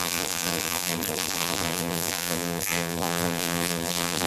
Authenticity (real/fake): fake